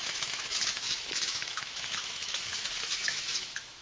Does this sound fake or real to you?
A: fake